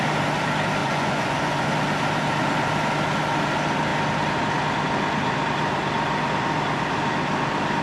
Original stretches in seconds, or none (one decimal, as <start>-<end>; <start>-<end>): 0.0-0.8; 1.7-7.8